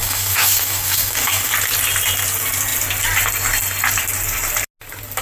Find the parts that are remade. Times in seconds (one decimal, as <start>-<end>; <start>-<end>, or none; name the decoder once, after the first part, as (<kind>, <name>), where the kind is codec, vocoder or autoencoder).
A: 0.0-1.5 (codec, DAC)